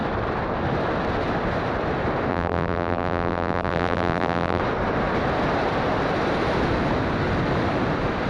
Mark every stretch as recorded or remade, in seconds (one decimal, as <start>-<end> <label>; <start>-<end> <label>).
0.0-2.3 recorded; 2.3-4.6 remade; 4.6-8.3 recorded